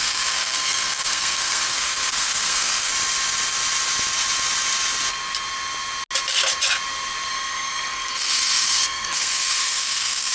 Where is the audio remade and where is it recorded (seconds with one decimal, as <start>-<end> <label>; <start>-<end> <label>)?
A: 0.0-2.9 remade; 2.9-7.3 recorded; 7.3-10.3 remade